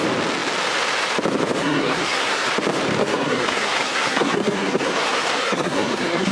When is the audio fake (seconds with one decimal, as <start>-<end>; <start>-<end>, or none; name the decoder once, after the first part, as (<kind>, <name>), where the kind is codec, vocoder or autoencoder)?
1.6-2.5 (codec, SNAC); 3.0-6.3